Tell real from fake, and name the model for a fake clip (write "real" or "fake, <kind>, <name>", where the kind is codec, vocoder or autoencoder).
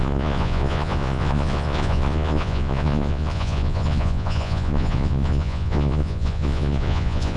fake, vocoder, Vocos